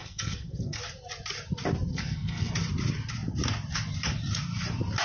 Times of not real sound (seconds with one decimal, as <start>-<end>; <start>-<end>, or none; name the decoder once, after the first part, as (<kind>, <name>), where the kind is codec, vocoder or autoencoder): 0.0-0.8 (codec, SNAC); 1.9-2.5